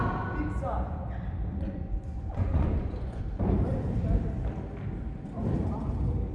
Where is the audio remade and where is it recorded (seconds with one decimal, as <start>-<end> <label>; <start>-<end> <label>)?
0.0-1.5 recorded; 1.5-3.2 remade; 3.2-6.3 recorded